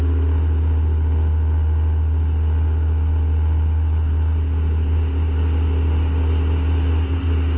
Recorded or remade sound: recorded